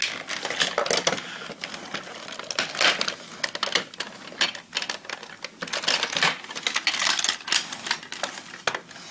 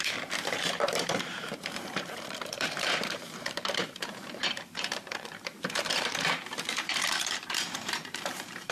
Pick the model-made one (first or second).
second